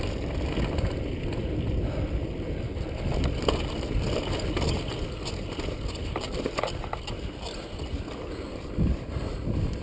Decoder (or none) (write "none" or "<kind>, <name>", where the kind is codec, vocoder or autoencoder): none